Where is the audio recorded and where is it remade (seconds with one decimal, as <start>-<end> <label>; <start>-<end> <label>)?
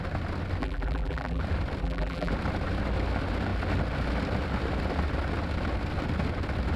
0.0-0.6 recorded; 0.6-1.4 remade; 1.4-1.8 recorded; 1.8-2.3 remade; 2.3-6.8 recorded